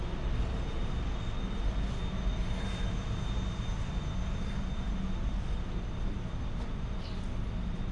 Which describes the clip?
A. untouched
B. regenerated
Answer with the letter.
A